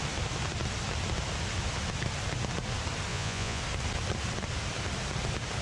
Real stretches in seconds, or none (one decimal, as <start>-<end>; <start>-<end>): 0.0-3.1; 3.6-5.6